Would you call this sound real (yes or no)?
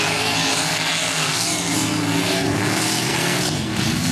no